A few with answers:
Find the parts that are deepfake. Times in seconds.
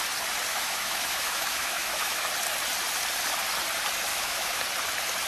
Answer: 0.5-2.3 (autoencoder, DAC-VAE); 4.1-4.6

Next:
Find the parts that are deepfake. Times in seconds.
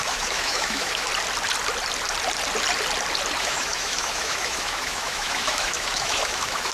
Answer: 0.0-1.1 (autoencoder, DAC-VAE); 3.4-6.7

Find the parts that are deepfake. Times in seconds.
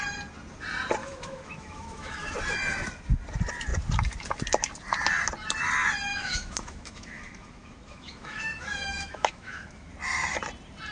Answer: 1.0-2.3 (autoencoder, DAC-VAE); 6.1-9.9